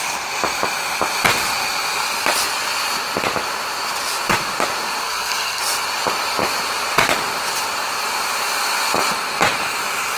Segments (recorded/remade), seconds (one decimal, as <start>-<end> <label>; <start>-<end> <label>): 0.0-5.0 recorded; 5.0-5.6 remade; 5.6-10.2 recorded